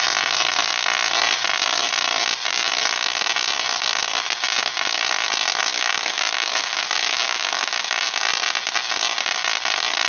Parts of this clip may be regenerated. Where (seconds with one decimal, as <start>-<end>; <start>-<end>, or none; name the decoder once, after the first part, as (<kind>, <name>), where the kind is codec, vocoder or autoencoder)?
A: 5.7-8.3 (autoencoder, DAC-VAE)